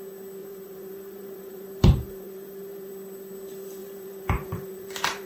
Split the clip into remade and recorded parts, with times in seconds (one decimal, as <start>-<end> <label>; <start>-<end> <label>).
0.0-0.4 recorded; 0.4-2.9 remade; 2.9-3.8 recorded; 3.8-5.3 remade